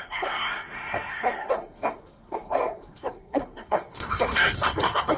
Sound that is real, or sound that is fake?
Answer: fake